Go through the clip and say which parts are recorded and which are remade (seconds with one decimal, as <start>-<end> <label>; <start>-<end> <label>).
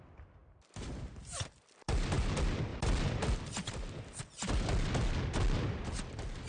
0.0-0.4 recorded; 0.4-2.3 remade; 2.3-2.7 recorded; 2.7-4.2 remade; 4.2-6.5 recorded